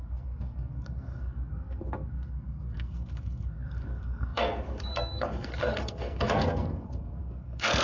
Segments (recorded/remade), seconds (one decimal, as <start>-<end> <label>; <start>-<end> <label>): 0.0-7.8 remade